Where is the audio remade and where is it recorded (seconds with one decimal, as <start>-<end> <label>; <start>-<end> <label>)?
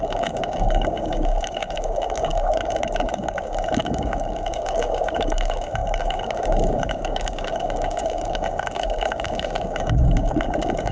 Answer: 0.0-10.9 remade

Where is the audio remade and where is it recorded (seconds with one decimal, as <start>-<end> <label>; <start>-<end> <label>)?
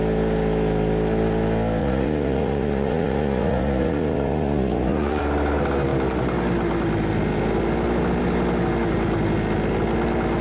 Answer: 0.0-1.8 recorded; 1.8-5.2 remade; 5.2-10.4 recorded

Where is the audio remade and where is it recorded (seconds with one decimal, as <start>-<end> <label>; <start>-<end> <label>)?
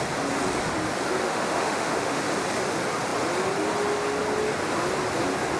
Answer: 0.0-1.2 recorded; 1.2-2.2 remade; 2.2-5.6 recorded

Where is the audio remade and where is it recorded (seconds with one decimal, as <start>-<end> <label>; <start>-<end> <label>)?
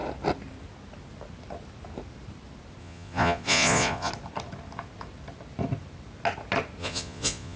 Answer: 0.0-2.8 recorded; 2.8-4.1 remade; 4.1-6.8 recorded; 6.8-7.6 remade